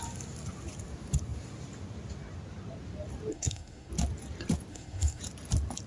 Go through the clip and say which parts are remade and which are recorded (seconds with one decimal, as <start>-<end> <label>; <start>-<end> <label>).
0.0-3.3 recorded; 3.3-3.9 remade; 3.9-4.7 recorded; 4.7-5.2 remade; 5.2-5.9 recorded